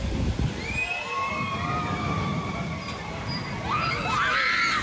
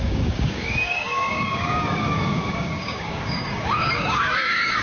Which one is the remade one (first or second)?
second